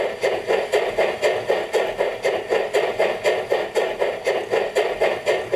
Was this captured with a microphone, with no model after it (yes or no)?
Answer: yes